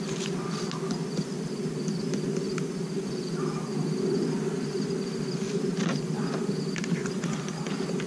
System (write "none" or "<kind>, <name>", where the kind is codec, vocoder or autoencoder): none